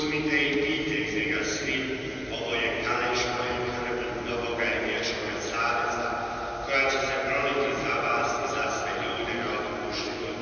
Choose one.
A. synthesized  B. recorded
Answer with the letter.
B